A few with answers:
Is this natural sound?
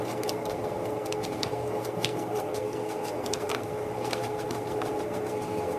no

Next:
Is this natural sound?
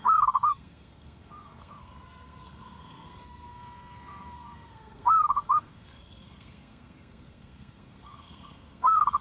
no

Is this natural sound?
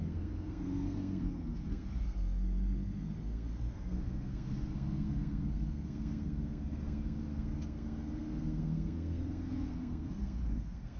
no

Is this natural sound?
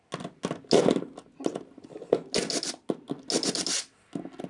yes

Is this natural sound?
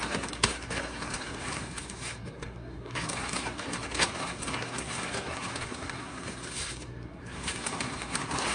no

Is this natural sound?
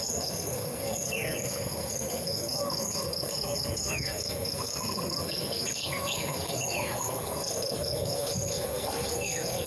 no